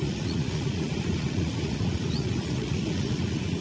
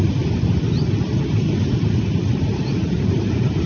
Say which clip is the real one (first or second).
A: second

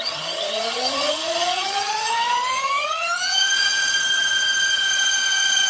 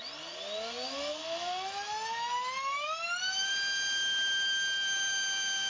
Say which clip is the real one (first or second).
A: second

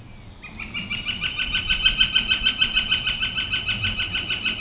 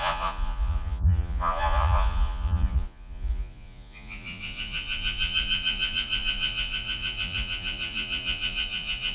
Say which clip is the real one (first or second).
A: first